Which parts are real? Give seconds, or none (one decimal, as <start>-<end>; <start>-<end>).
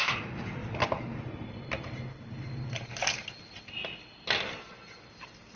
0.0-5.6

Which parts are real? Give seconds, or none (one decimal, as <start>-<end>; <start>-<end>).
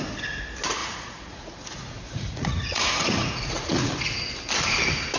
0.0-0.8; 3.9-5.2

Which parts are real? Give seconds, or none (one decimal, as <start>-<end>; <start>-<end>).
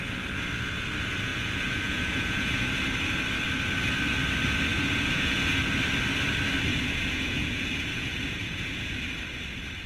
0.0-1.3; 2.7-4.7; 5.6-6.7; 8.9-9.9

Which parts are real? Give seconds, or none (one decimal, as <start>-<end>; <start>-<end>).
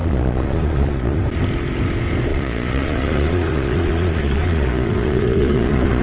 1.2-2.3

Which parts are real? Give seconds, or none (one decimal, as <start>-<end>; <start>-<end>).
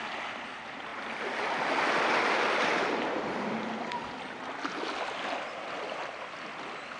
0.0-7.0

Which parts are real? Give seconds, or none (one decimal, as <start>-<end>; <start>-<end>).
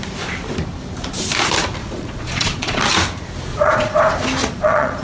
0.0-1.8; 2.8-3.5; 4.0-4.4